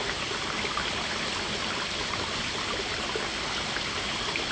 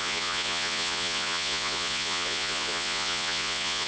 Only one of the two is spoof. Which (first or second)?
second